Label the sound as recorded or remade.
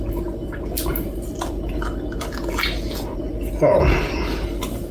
recorded